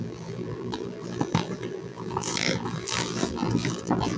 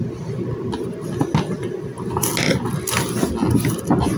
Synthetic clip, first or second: first